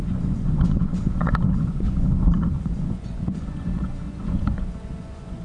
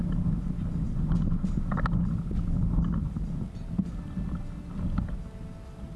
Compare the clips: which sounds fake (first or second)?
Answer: first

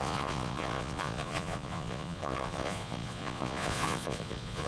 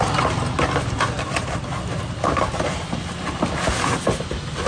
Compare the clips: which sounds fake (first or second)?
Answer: first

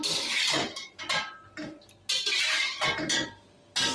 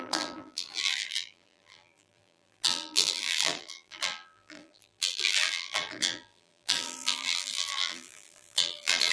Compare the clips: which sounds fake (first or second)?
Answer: second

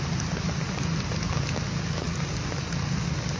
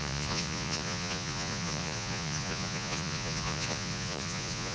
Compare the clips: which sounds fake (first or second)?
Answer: second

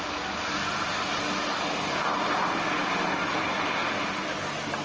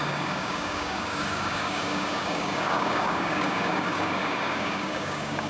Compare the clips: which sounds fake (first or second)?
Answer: second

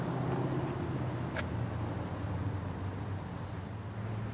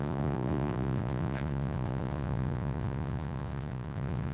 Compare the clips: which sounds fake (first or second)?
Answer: second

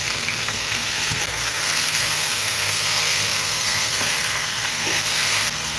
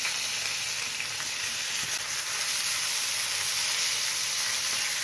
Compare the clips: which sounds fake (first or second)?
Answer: first